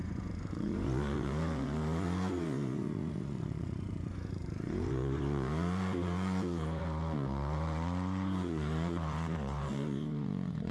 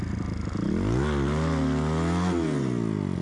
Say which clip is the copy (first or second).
first